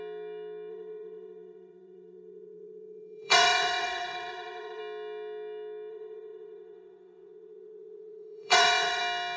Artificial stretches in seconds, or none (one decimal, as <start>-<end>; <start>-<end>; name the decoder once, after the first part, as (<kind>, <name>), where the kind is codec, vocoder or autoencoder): 0.7-4.8 (vocoder, WaveNeXt); 5.9-9.0